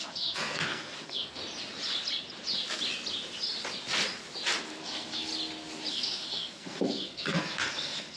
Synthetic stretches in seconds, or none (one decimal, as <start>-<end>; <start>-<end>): 0.0-1.4; 4.8-5.3; 5.9-8.2